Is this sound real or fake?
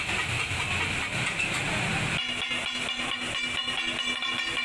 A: real